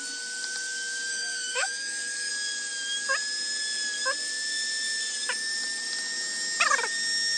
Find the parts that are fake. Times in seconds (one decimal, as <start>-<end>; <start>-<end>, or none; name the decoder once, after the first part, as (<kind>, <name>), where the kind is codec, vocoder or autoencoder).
1.1-2.3 (codec, DAC)